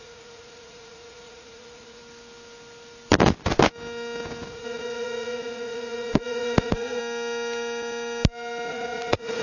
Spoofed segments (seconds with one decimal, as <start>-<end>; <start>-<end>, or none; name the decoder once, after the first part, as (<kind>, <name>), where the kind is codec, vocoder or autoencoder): 0.0-2.0 (vocoder, Vocos); 4.5-7.0; 8.7-9.4